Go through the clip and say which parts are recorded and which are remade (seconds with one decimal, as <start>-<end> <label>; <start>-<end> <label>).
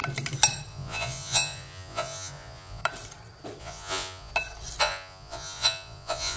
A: 0.0-0.7 recorded; 0.7-2.8 remade; 2.8-3.6 recorded; 3.6-4.3 remade; 4.3-4.8 recorded; 4.8-6.4 remade